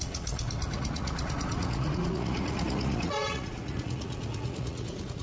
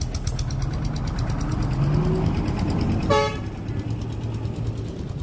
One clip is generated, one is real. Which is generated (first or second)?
first